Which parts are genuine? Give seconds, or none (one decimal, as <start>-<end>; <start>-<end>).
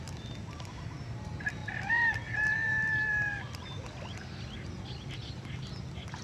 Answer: 0.0-6.2